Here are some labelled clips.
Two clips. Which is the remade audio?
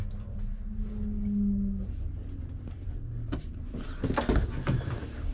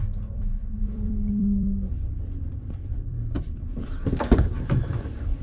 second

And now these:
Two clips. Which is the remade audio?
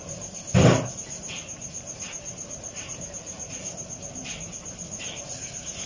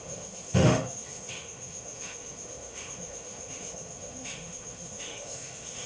second